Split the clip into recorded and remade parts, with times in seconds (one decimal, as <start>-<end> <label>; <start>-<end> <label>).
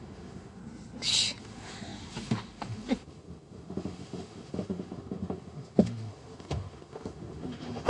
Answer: 0.0-0.6 remade; 0.6-1.4 recorded; 1.4-7.9 remade